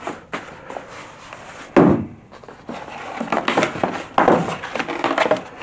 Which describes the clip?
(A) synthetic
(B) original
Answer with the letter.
B